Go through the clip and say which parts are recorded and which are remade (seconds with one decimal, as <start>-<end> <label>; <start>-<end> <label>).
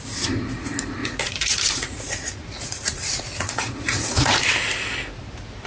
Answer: 0.0-1.0 recorded; 1.0-4.4 remade; 4.4-5.7 recorded